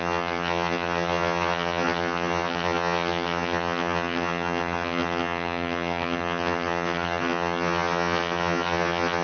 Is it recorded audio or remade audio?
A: remade